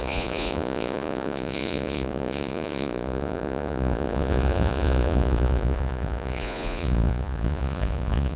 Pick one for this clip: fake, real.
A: fake